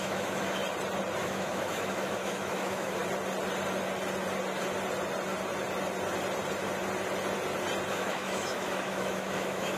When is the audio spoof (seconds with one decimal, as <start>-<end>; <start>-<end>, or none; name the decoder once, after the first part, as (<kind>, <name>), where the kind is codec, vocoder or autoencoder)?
0.0-0.6 (autoencoder, DAC-VAE); 1.2-3.0; 7.9-9.8